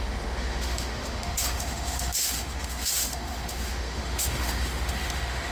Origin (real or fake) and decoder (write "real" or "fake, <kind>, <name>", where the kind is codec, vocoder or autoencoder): fake, autoencoder, DAC-VAE